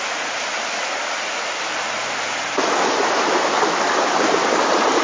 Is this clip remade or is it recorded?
recorded